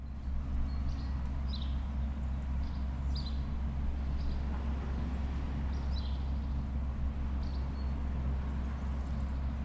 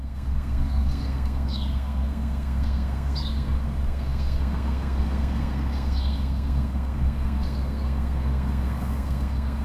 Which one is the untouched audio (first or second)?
first